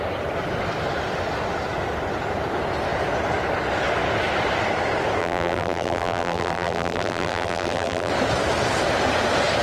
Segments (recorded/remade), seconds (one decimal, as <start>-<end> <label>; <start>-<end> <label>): 0.0-5.2 recorded; 5.2-8.1 remade; 8.1-9.6 recorded